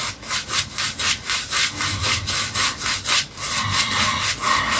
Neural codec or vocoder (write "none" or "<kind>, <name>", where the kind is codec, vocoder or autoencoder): none